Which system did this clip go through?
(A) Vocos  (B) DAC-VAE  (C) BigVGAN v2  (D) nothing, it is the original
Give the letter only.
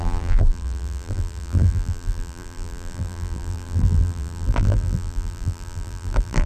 C